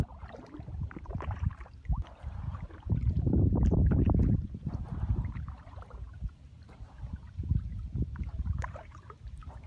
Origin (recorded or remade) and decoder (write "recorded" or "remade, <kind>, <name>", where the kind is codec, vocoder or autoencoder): remade, vocoder, BigVGAN v2